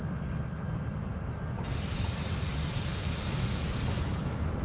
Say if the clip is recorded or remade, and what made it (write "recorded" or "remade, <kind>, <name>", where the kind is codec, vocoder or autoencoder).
recorded